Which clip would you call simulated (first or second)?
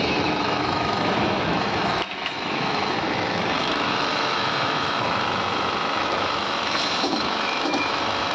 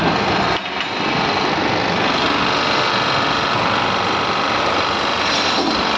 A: first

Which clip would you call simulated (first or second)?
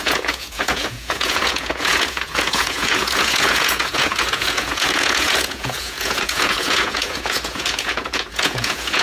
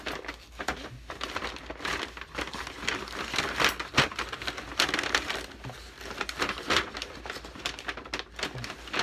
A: first